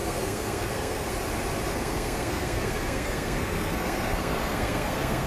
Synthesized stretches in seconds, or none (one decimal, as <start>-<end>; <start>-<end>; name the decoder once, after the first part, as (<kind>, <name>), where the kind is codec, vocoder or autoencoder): 0.0-1.1 (codec, SNAC); 1.7-5.3